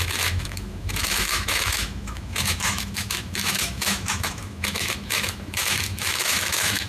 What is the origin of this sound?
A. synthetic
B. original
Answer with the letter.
A